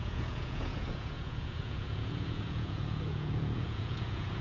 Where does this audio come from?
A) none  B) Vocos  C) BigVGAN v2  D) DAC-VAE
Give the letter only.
B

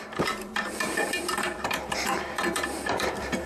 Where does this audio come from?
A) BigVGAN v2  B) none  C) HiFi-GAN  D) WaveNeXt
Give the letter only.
A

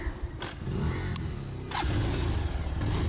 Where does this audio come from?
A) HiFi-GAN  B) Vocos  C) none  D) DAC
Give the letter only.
C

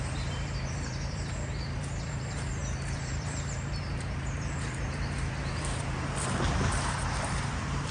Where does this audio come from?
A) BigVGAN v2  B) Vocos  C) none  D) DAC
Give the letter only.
A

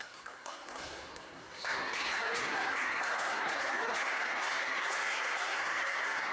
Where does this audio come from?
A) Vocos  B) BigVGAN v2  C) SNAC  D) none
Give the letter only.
C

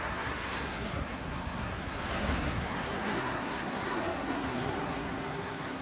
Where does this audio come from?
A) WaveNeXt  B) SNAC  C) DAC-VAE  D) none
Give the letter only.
B